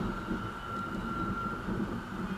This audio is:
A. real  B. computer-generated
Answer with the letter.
A